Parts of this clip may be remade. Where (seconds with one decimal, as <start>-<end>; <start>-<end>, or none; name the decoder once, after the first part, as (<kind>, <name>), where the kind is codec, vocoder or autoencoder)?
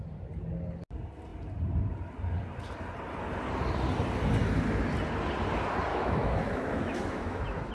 5.9-7.7 (autoencoder, DAC-VAE)